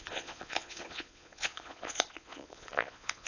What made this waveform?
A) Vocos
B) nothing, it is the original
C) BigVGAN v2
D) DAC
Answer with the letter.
A